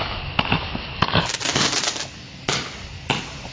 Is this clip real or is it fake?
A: real